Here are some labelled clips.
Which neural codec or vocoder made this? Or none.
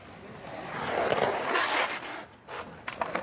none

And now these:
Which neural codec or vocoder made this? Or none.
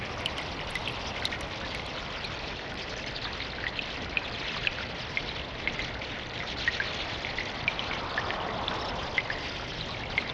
vocoder, BigVGAN v2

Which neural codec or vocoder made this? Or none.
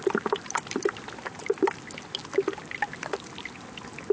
none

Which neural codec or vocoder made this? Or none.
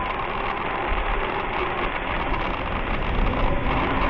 none